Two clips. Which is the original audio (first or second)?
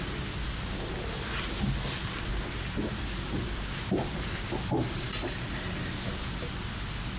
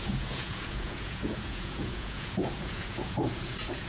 first